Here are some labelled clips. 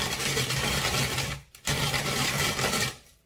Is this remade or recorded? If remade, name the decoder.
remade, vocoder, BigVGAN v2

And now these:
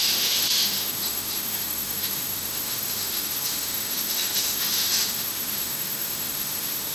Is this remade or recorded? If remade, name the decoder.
remade, autoencoder, DAC-VAE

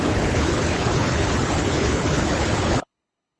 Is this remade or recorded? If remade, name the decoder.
remade, codec, HILCodec